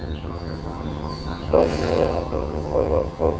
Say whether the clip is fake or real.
fake